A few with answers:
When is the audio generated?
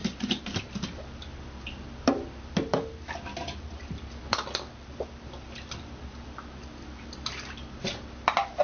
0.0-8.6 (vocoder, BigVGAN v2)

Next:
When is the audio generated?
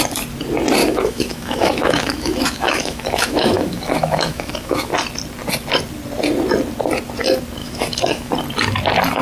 0.8-4.9 (autoencoder, DAC-VAE); 7.6-8.3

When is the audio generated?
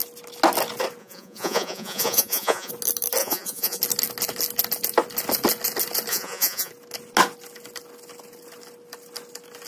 1.0-2.7 (vocoder, Vocos); 3.2-3.8; 6.1-6.7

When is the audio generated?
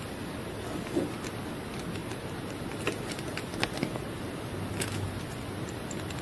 none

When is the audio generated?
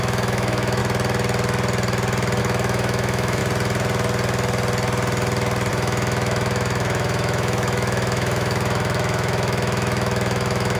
0.0-0.8 (autoencoder, DAC-VAE); 2.4-3.4; 5.7-10.8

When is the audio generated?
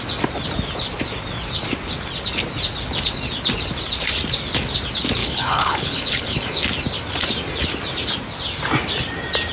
5.2-6.4 (codec, HILCodec)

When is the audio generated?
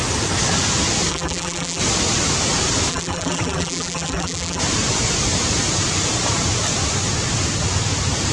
1.1-1.8 (vocoder, BigVGAN v2); 2.9-4.6